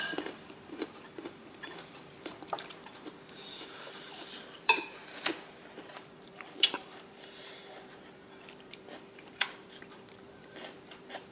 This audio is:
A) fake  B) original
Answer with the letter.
A